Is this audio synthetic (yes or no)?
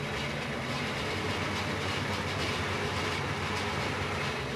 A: no